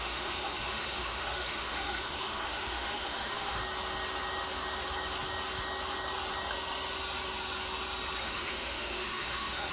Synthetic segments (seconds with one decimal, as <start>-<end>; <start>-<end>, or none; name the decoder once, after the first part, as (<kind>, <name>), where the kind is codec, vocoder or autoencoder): 0.0-3.6 (autoencoder, DAC-VAE); 8.2-9.7